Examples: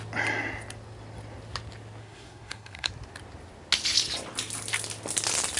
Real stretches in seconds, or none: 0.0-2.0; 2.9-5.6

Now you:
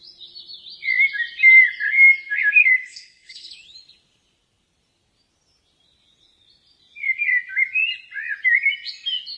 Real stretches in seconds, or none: 0.0-2.6; 3.5-9.4

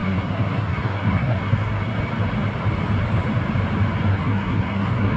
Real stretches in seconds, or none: 2.0-4.1

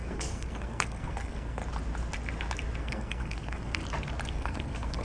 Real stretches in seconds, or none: 1.6-2.8; 3.8-4.3

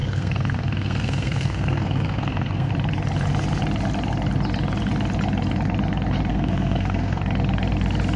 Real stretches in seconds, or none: 2.7-6.3; 7.2-8.2